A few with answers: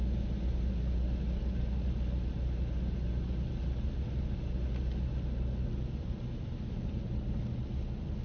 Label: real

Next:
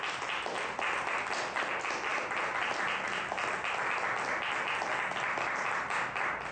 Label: real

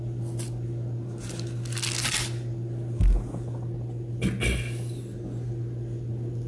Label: real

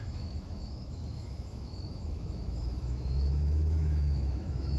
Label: fake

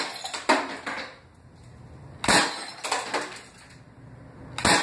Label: real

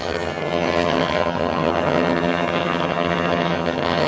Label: fake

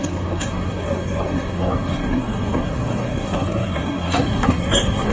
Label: fake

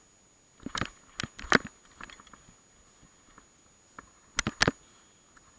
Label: real